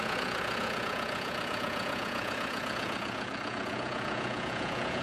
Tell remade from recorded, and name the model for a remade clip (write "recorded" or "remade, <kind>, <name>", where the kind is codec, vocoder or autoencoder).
remade, vocoder, Vocos